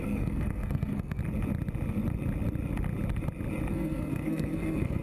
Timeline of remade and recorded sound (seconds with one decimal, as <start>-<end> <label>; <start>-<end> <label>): 0.0-1.2 remade; 1.2-3.7 recorded; 3.7-5.0 remade